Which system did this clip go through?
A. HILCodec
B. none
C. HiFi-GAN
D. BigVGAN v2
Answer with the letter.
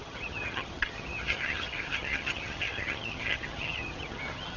C